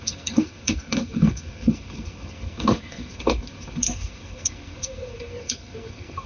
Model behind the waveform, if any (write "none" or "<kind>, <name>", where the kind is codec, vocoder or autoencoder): codec, SNAC